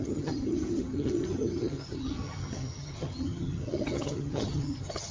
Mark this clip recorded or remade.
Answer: remade